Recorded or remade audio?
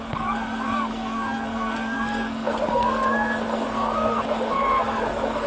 remade